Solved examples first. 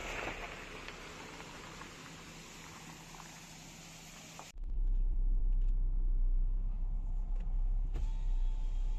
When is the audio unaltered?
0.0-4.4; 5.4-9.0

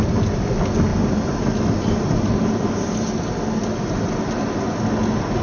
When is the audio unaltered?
0.0-5.4